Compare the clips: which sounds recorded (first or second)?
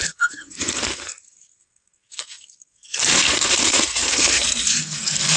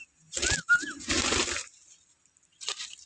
second